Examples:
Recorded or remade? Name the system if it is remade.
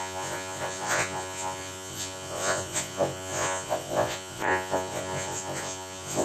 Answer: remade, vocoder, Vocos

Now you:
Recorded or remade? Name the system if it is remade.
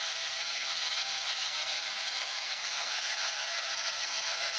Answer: remade, codec, SNAC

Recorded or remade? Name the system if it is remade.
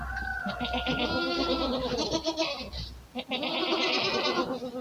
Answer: recorded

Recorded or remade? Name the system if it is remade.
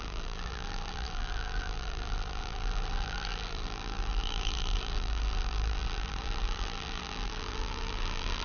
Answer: remade, vocoder, BigVGAN v2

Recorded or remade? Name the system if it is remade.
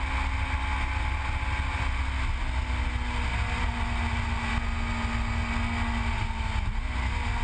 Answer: recorded